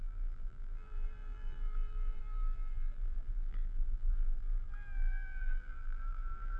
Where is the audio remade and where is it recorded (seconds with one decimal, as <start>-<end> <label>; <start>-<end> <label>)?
0.0-6.6 remade